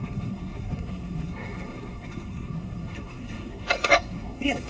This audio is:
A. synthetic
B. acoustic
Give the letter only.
A